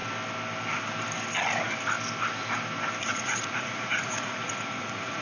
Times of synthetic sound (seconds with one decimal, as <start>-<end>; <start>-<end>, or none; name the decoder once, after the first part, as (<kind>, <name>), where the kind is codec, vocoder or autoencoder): 3.0-5.2 (vocoder, Vocos)